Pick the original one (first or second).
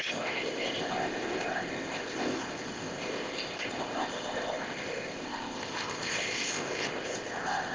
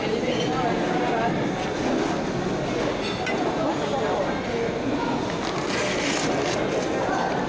second